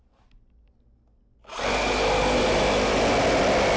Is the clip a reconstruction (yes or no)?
no